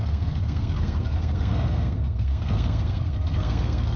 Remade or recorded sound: remade